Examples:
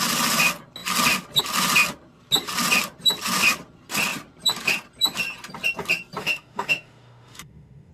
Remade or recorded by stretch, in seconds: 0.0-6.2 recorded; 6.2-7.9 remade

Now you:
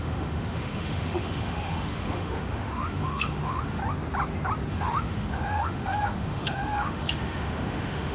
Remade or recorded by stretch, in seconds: 0.0-3.8 remade; 3.8-4.7 recorded; 4.7-8.1 remade